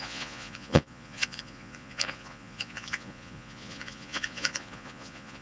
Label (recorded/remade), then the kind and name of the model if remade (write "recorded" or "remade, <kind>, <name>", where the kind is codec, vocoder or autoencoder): remade, vocoder, Vocos